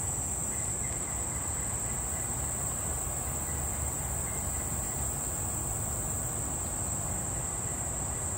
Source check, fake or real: real